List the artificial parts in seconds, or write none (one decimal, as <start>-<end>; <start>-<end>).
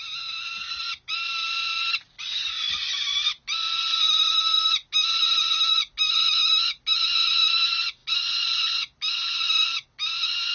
none